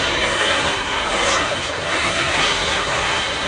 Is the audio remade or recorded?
remade